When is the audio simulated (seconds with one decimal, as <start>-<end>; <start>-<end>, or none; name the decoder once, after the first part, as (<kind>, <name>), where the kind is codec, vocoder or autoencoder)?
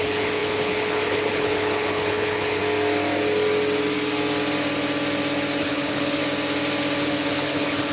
0.0-2.6 (codec, HILCodec); 5.6-6.2; 7.0-7.9